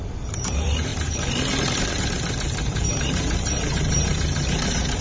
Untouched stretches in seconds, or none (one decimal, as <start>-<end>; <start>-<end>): 0.9-2.6